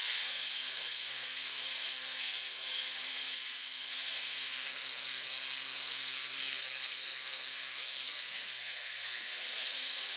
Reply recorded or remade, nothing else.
remade